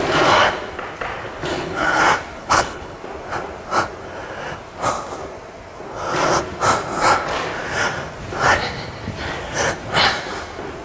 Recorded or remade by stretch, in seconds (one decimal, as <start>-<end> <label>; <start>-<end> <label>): 0.0-1.5 recorded; 1.5-2.0 remade; 2.0-2.4 recorded; 2.4-3.0 remade; 3.0-10.8 recorded